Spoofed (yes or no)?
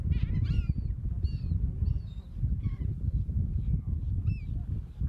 no